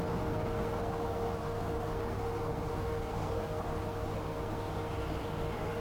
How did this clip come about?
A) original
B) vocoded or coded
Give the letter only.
B